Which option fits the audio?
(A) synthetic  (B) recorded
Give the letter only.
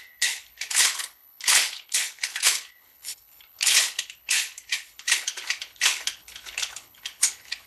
A